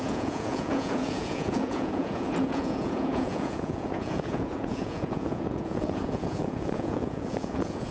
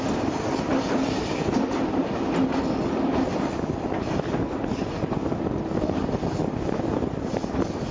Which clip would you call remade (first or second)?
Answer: first